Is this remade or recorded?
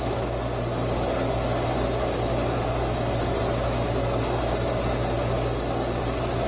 recorded